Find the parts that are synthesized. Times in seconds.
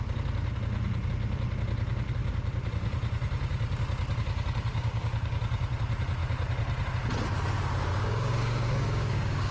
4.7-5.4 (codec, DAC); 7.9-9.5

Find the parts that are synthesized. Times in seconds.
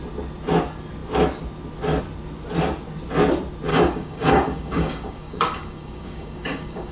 3.7-6.9 (codec, DAC)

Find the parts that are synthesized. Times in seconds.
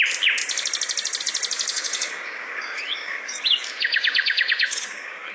1.7-5.3 (codec, DAC)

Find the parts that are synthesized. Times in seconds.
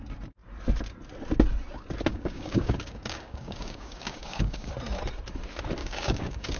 2.1-4.7 (codec, DAC); 5.8-6.6